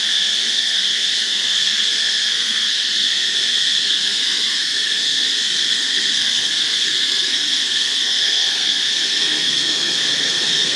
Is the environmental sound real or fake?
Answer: fake